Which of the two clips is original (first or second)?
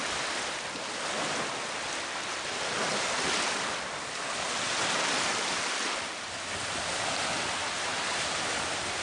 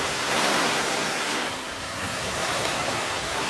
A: first